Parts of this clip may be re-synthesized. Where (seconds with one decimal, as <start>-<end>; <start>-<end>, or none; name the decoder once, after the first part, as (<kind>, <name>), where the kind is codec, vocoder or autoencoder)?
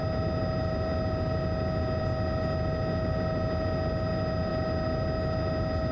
none